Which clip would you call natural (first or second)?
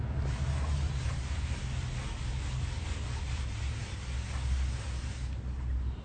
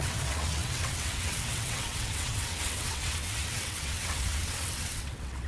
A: first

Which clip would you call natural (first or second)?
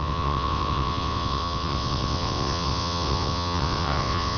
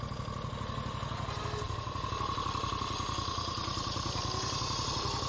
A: second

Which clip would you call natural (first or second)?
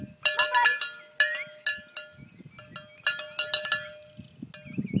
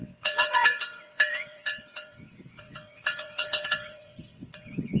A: first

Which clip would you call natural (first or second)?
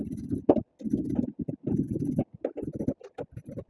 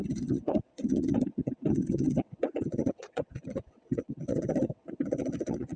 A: first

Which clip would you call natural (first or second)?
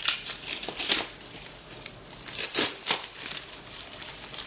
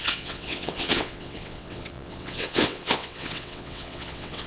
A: first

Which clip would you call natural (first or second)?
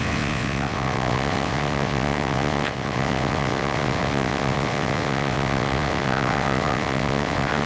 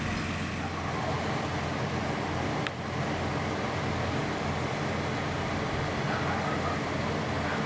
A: second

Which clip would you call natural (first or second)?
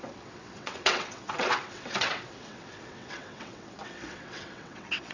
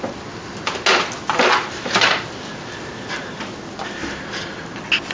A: second